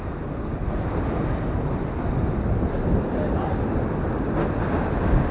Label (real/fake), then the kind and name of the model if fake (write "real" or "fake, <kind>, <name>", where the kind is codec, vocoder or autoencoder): real